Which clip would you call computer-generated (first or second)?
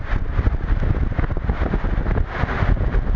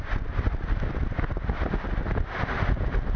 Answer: second